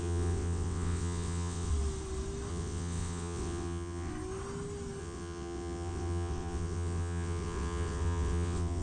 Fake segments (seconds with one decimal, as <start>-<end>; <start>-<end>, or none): 0.0-1.7; 2.5-4.1; 5.0-8.8